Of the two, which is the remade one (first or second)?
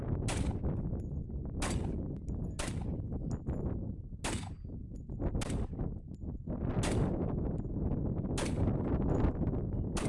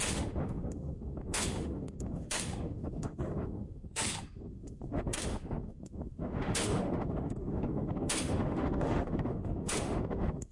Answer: second